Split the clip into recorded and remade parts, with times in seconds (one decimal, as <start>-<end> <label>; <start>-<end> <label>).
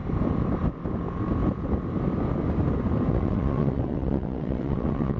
0.0-3.1 recorded; 3.1-5.2 remade